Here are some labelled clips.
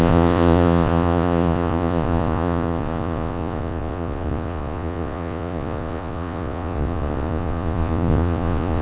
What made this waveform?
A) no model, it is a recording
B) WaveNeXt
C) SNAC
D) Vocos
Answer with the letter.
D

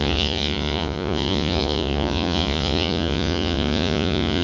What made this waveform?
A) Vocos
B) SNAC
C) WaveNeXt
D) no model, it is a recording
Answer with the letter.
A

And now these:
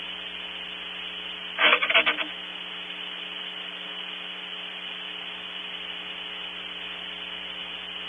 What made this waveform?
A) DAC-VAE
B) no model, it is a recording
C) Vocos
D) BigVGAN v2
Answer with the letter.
B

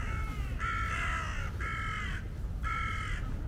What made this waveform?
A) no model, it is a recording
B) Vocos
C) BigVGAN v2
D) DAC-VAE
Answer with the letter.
A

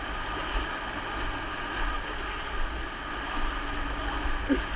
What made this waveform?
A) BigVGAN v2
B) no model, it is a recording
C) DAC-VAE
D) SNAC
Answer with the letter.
B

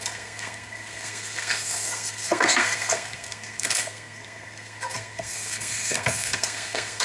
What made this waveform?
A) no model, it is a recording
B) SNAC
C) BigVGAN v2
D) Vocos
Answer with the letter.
B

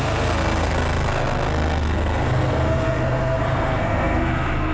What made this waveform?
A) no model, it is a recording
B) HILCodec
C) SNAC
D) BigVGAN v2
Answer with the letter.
C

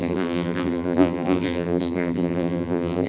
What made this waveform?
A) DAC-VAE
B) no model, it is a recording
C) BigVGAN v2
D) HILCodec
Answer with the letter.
C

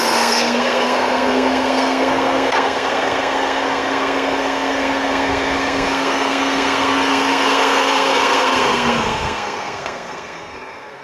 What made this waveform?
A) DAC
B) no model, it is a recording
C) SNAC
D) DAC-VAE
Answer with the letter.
C